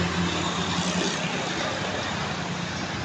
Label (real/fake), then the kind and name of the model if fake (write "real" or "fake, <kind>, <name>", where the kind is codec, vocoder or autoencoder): real